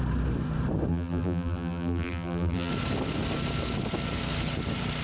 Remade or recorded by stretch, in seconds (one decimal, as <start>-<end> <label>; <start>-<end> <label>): 0.0-0.9 recorded; 0.9-2.7 remade; 2.7-5.0 recorded